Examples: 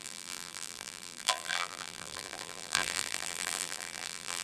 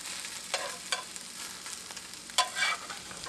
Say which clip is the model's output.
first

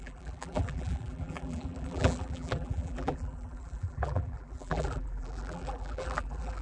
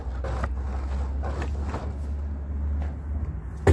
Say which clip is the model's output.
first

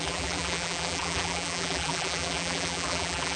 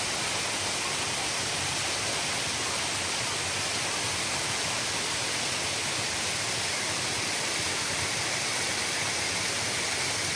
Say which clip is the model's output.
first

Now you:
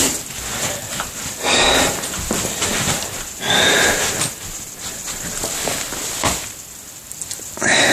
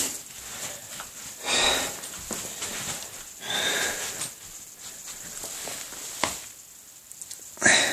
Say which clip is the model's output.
first